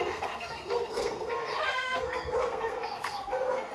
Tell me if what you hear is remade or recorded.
remade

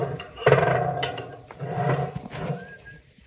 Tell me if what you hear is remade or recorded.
remade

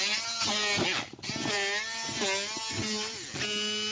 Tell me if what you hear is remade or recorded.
recorded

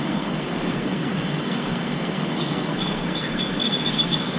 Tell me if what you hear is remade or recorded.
remade